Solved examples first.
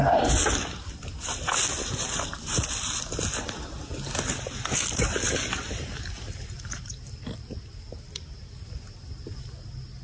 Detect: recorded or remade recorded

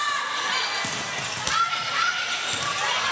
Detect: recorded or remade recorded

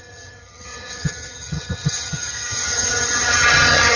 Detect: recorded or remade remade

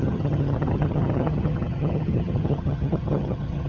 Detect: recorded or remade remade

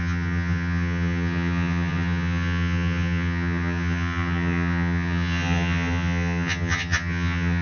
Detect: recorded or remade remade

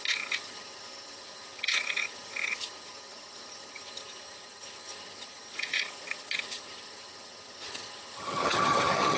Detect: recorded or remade remade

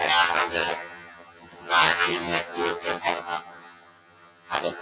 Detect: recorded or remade remade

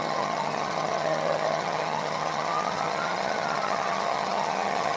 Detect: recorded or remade remade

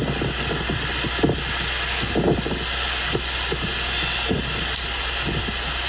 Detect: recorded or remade recorded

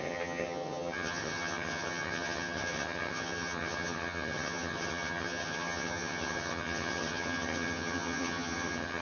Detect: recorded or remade remade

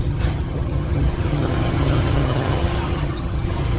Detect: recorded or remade remade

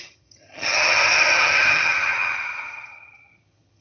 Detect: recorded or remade remade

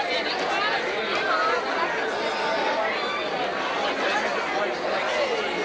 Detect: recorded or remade recorded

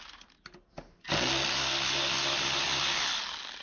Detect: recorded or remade recorded